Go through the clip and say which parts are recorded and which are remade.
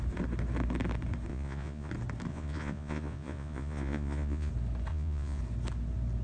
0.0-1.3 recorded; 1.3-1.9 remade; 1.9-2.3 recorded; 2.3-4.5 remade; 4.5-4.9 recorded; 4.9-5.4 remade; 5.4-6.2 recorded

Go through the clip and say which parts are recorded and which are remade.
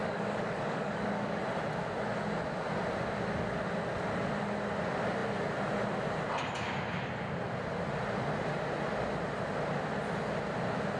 0.0-1.4 remade; 1.4-11.0 recorded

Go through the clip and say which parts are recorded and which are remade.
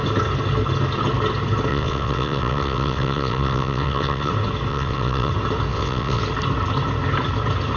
0.0-1.7 recorded; 1.7-4.3 remade; 4.3-4.7 recorded; 4.7-5.3 remade; 5.3-5.7 recorded; 5.7-6.2 remade; 6.2-7.8 recorded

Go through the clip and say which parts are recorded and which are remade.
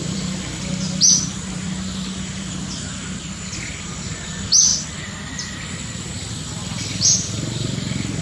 0.0-4.7 remade; 4.7-8.2 recorded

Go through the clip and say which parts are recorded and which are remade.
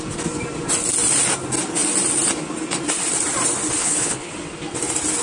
0.0-3.8 recorded; 3.8-4.3 remade; 4.3-5.2 recorded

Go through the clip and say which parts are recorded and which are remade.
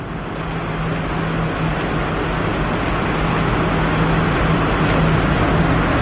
0.0-6.0 recorded